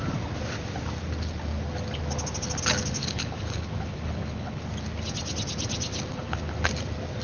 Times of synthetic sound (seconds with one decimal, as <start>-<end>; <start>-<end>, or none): 3.0-4.6; 6.1-6.7